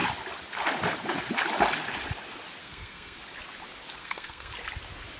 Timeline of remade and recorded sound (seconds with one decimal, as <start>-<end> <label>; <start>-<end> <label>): 0.0-2.6 recorded; 2.6-3.2 remade; 3.2-4.0 recorded; 4.0-4.5 remade; 4.5-5.2 recorded